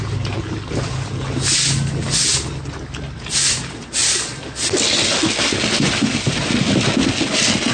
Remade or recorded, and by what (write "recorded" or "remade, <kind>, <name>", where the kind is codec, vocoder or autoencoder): recorded